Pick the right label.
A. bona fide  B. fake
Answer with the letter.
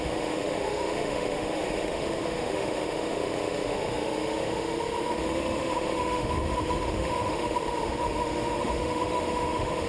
B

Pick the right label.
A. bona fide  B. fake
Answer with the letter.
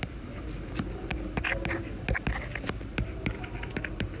A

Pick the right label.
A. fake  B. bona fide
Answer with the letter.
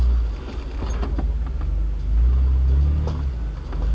B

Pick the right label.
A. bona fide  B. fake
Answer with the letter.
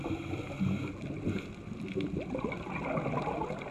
A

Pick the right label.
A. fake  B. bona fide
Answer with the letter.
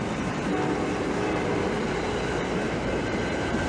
A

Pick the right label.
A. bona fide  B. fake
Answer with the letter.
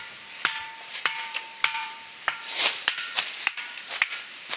B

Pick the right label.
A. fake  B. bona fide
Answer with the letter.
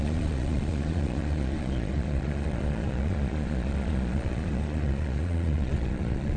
A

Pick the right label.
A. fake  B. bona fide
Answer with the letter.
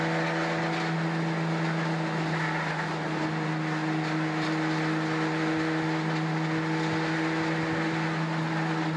B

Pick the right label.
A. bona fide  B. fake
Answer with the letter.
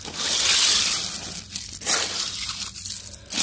A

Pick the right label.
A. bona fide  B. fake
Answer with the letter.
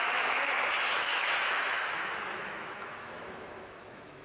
B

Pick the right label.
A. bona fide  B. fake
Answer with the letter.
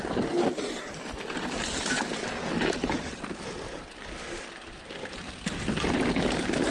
A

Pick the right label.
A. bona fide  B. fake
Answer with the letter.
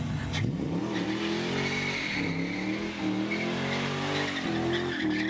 A